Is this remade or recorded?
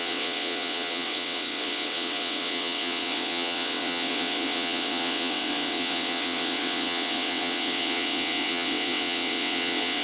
remade